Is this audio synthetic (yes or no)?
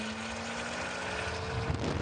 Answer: no